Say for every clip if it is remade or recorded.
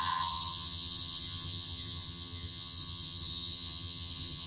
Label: remade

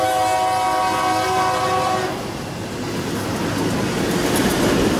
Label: recorded